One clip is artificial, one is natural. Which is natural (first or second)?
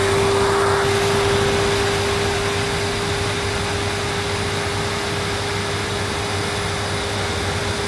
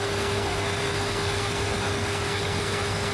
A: first